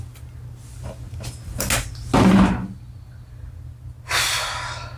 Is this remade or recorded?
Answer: recorded